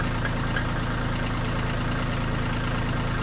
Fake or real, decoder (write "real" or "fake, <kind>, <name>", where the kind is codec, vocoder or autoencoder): real